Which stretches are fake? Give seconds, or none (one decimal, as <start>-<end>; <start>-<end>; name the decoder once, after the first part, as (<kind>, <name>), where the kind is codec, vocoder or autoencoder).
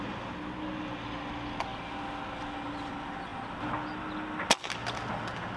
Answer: none